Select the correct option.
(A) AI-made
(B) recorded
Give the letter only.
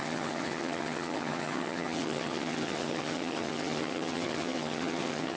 A